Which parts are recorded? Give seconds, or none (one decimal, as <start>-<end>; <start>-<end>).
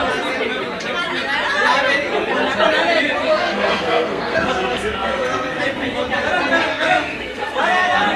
0.0-3.3; 5.6-6.7; 7.6-8.2